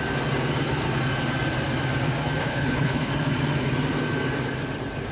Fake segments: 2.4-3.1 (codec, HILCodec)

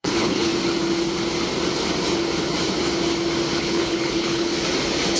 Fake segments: 0.0-0.5 (codec, HILCodec); 3.6-4.5

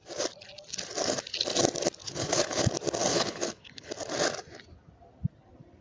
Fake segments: 2.0-2.6 (codec, HILCodec); 3.1-3.9

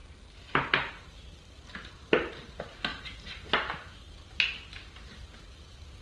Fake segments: none

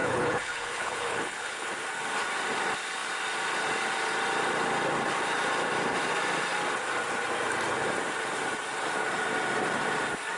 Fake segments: 0.0-1.7 (codec, HILCodec)

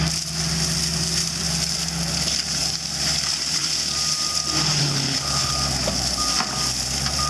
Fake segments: 4.8-5.5 (codec, HILCodec)

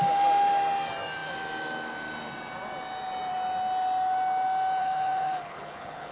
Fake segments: 4.8-6.1 (codec, HILCodec)